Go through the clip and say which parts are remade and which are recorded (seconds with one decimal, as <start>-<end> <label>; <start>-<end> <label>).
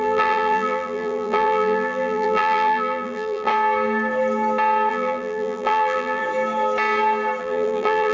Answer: 0.0-3.5 remade; 3.5-4.9 recorded; 4.9-6.2 remade; 6.2-7.4 recorded; 7.4-8.1 remade